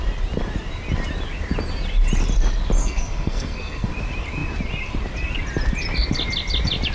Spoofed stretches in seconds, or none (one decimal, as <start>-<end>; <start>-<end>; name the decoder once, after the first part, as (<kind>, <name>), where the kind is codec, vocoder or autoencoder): 2.8-3.9 (codec, SNAC)